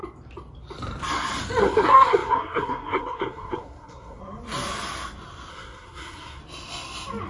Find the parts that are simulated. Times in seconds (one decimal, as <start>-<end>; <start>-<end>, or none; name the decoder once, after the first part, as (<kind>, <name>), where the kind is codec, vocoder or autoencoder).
1.6-4.2 (codec, SNAC); 5.5-6.4